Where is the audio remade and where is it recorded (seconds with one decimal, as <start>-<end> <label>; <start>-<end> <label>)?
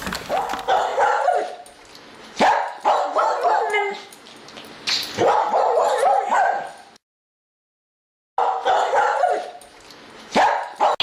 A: 0.0-11.0 recorded